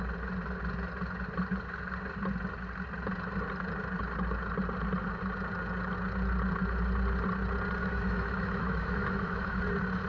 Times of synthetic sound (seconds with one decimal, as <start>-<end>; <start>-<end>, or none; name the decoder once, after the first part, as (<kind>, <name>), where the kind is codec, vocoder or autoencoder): 7.8-9.6 (autoencoder, DAC-VAE)